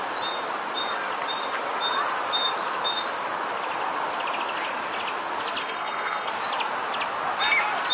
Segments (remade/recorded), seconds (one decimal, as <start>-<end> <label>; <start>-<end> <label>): 0.0-5.6 recorded; 5.6-6.3 remade; 6.3-7.9 recorded